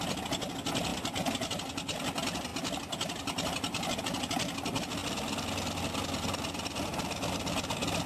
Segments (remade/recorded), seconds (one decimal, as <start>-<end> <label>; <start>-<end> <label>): 0.0-0.9 recorded; 0.9-1.5 remade; 1.5-8.1 recorded

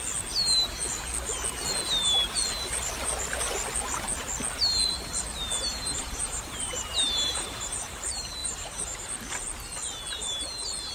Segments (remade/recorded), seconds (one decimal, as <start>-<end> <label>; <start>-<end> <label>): 0.0-5.7 recorded; 5.7-8.0 remade; 8.0-8.4 recorded; 8.4-9.1 remade; 9.1-10.9 recorded